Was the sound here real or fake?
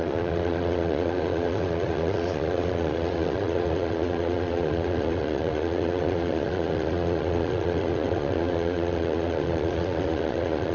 fake